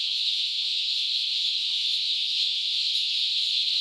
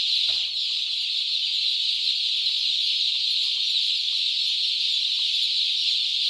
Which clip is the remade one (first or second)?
first